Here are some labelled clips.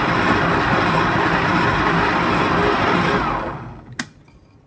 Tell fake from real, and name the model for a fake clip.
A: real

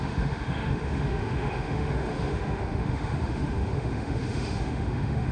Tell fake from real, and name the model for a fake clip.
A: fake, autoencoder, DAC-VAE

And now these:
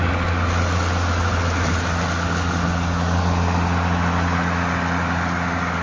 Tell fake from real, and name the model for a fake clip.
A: real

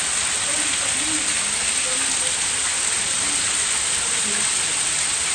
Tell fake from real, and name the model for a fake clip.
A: real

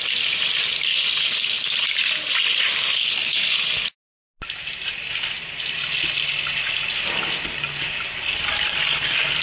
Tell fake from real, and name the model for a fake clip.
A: real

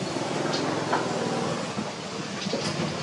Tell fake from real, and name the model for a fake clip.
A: real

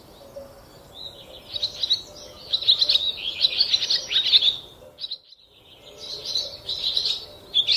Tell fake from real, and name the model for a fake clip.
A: real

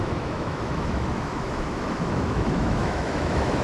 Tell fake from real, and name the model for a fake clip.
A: fake, autoencoder, DAC-VAE